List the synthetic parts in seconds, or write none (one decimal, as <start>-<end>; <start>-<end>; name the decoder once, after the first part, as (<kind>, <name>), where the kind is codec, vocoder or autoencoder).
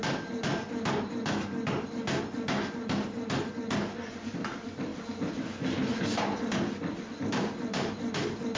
4.1-4.9 (vocoder, BigVGAN v2); 7.2-8.6